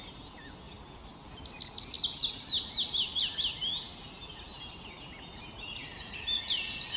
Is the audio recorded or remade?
recorded